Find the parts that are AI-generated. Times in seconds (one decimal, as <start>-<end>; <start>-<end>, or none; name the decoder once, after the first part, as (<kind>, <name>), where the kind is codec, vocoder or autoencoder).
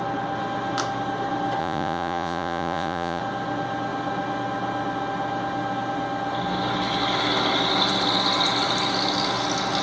1.6-3.2 (vocoder, Vocos)